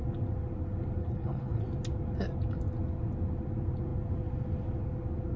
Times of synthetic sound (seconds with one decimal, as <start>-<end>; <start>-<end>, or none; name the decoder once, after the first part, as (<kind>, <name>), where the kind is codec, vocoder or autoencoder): 1.0-1.6 (codec, HILCodec)